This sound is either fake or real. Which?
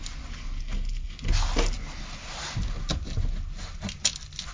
real